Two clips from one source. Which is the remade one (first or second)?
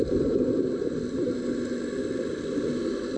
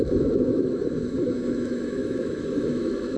second